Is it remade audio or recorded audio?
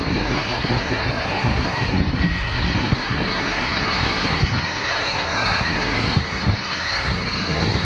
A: remade